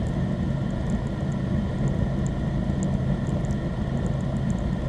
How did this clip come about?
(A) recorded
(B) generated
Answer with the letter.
A